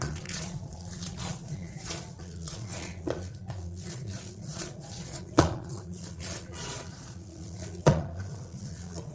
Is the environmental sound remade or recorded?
remade